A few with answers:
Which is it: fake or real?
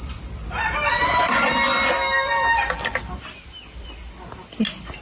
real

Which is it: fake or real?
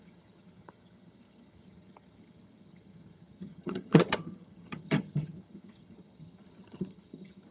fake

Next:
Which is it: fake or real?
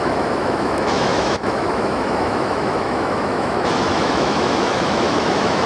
fake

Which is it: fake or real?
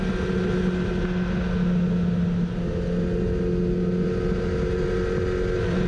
real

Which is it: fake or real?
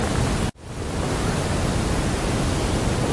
real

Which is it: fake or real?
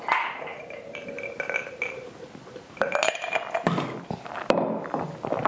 real